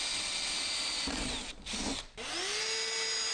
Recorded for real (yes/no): yes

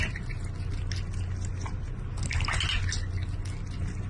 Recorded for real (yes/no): yes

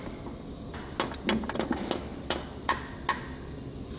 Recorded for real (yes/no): yes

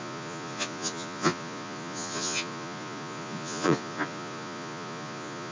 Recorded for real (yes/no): no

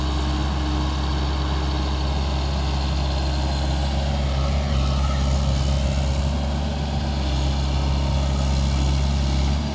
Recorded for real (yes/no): yes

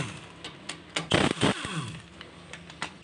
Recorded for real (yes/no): yes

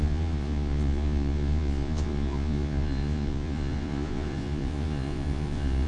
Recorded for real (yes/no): no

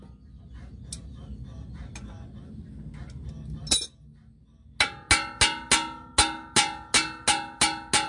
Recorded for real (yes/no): yes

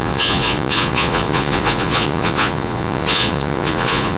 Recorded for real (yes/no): no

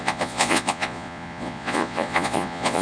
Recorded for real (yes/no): no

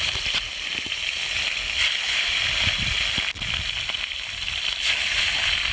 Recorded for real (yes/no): yes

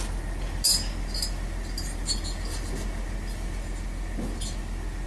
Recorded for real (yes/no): yes